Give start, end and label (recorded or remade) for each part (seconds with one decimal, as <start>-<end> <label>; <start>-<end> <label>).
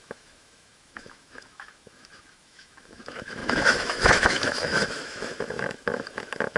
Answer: 0.0-6.6 remade